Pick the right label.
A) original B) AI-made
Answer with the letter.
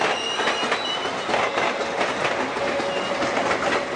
A